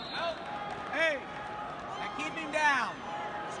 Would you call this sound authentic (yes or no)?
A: yes